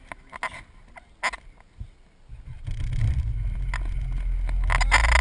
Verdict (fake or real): real